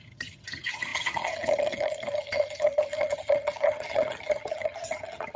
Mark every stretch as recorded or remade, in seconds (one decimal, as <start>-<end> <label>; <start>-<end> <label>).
0.0-5.4 remade